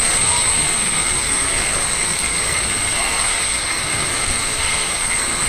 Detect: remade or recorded remade